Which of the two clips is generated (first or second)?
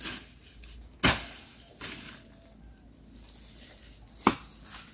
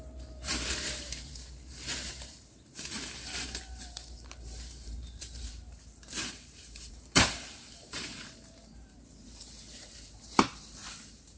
second